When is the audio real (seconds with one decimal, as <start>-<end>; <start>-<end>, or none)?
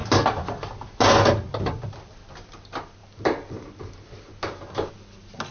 0.0-5.5